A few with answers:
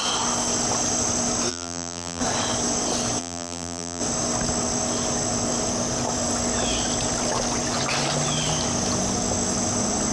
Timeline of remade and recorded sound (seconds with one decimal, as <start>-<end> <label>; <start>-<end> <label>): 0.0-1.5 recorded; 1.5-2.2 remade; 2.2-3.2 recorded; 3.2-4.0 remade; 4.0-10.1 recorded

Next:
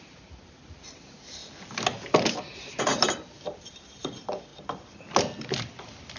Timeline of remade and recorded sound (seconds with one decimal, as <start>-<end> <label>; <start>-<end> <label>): 0.0-1.4 remade; 1.4-2.8 recorded; 2.8-4.5 remade; 4.5-5.8 recorded; 5.8-6.2 remade

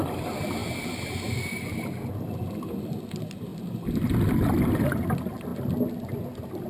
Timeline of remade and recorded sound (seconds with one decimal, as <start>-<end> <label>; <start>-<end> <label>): 0.0-6.7 recorded

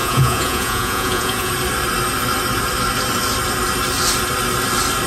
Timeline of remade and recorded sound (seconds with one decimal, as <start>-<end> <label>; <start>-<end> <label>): 0.0-1.5 remade; 1.5-5.1 recorded

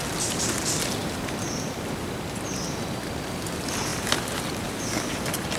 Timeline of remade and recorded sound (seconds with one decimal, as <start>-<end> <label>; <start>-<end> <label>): 0.0-1.0 recorded; 1.0-3.5 remade; 3.5-5.6 recorded

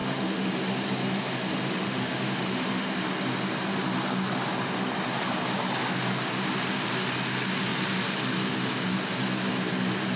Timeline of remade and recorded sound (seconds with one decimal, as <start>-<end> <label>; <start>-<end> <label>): 0.0-0.5 remade; 0.5-1.6 recorded; 1.6-2.9 remade; 2.9-10.2 recorded